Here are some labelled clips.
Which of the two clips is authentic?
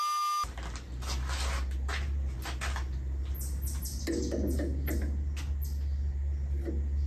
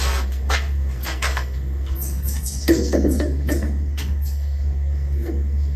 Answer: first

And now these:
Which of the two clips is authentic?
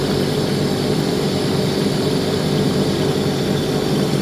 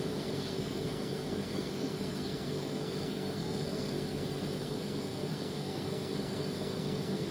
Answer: first